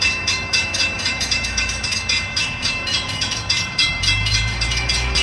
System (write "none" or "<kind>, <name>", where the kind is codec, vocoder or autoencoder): autoencoder, DAC-VAE